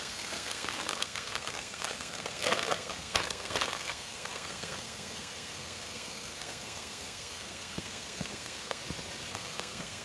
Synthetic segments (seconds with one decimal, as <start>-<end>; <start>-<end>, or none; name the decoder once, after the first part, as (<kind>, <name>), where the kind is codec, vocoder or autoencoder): 0.0-8.8 (codec, SNAC); 9.3-10.0